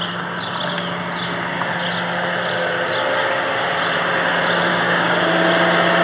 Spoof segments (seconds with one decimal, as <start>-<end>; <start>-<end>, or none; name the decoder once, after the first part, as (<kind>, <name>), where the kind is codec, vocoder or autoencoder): 4.7-5.3 (codec, DAC)